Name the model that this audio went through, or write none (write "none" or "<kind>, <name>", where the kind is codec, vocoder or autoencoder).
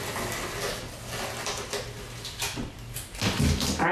none